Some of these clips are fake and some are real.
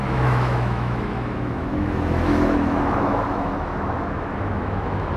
fake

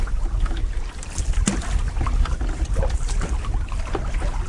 real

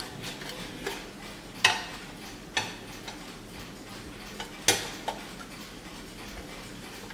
real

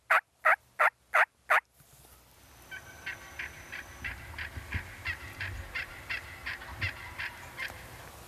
real